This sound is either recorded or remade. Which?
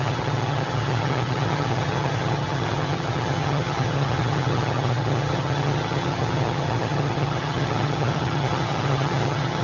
remade